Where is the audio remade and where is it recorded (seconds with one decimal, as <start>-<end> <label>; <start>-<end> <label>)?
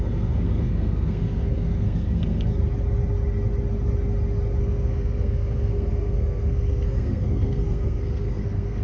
0.0-2.5 remade; 2.5-4.6 recorded; 4.6-8.8 remade